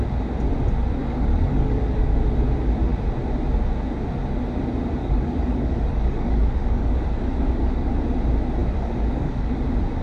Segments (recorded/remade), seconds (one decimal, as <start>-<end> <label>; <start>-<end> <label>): 0.0-1.0 recorded; 1.0-2.2 remade; 2.2-5.0 recorded; 5.0-7.9 remade; 7.9-8.6 recorded; 8.6-9.6 remade; 9.6-10.0 recorded